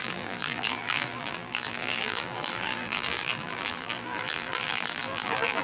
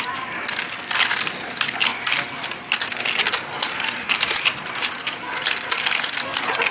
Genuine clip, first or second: second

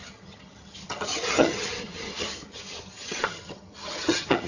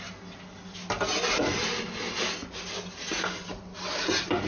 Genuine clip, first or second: second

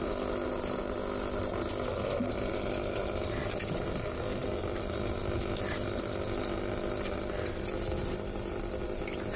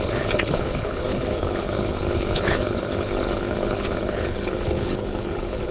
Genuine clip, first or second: first